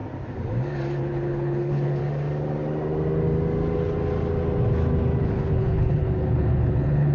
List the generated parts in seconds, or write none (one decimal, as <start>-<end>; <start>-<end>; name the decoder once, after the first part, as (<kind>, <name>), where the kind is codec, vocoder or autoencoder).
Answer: 1.0-2.0 (codec, HILCodec); 5.2-7.1